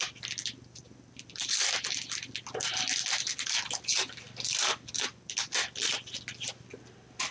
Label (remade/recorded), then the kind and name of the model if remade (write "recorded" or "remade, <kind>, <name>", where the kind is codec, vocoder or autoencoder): recorded